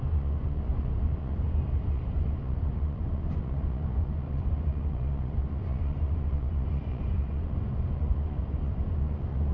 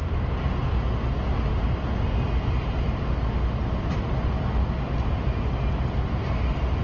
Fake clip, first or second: first